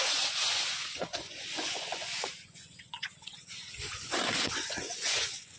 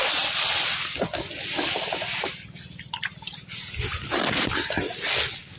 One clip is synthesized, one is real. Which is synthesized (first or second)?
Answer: first